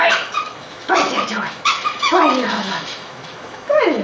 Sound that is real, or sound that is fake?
fake